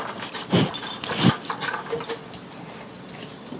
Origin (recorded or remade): recorded